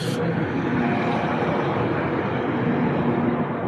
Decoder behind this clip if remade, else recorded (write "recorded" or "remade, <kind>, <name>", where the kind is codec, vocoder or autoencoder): recorded